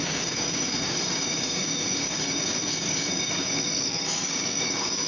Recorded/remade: remade